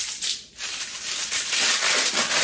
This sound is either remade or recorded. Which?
recorded